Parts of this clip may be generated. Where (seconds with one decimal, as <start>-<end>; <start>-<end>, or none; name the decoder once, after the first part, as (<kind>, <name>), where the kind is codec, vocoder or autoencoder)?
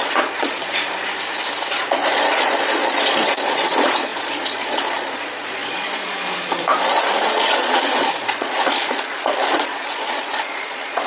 0.0-0.9 (vocoder, Vocos); 1.7-11.1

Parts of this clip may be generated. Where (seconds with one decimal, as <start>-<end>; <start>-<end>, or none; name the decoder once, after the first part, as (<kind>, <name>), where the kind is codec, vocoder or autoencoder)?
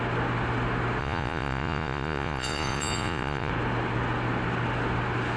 1.0-3.5 (vocoder, Vocos)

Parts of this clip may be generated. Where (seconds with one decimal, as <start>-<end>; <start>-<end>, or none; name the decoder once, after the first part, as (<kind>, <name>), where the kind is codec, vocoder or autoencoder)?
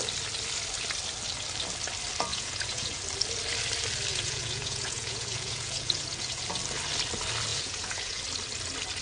2.3-3.0 (vocoder, Vocos); 4.1-6.4; 7.5-8.2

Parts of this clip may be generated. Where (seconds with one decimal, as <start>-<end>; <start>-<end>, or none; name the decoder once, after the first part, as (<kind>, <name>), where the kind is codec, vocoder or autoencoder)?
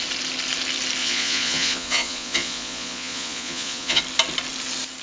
1.0-4.0 (vocoder, Vocos)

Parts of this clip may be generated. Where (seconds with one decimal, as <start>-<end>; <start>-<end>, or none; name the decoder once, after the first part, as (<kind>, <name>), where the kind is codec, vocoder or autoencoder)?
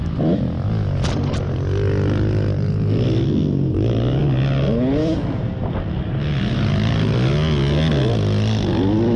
none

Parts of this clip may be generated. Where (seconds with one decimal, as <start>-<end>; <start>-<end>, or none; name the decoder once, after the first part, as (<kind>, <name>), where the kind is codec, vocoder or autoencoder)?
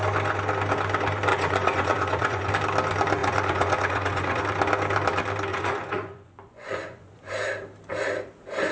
1.3-2.5 (vocoder, Vocos); 3.2-4.4; 5.5-7.3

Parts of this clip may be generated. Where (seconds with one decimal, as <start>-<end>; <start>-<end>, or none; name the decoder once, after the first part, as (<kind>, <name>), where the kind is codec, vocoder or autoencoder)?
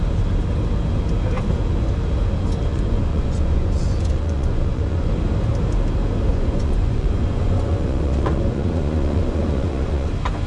2.7-5.1 (vocoder, Vocos); 6.3-10.1